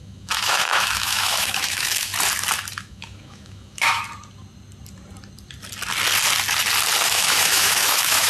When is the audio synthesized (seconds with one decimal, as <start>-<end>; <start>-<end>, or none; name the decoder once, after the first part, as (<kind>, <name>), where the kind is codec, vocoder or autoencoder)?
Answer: 0.0-2.1 (autoencoder, DAC-VAE); 2.8-4.0; 7.0-8.3